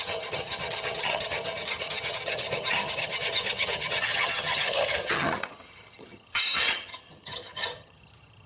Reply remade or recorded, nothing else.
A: remade